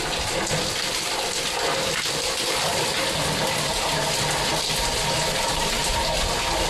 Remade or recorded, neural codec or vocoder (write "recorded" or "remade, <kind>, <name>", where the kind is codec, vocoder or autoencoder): recorded